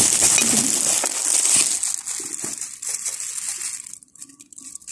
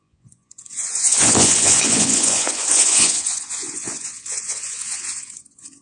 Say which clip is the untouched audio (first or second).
first